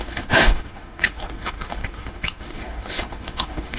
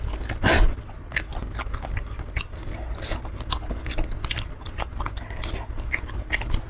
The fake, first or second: first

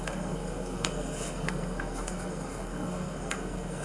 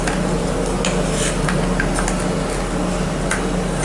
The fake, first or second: first